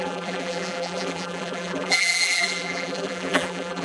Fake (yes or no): yes